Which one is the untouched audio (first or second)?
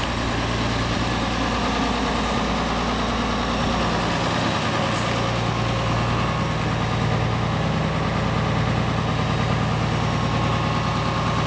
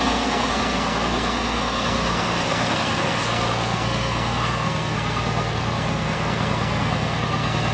first